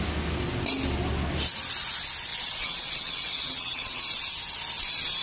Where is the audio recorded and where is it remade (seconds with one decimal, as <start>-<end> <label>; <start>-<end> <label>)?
0.0-2.3 recorded; 2.3-4.0 remade; 4.0-5.2 recorded